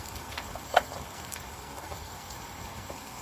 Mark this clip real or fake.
fake